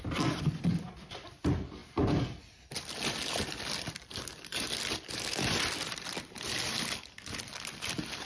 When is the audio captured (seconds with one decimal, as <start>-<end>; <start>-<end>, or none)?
none